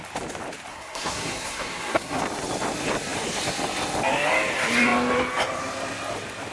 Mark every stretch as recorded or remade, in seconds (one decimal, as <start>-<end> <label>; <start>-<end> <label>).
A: 0.0-0.7 recorded; 0.7-2.2 remade; 2.2-6.5 recorded